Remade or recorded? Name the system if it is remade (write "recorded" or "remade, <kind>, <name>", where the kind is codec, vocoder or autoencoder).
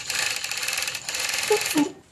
remade, vocoder, BigVGAN v2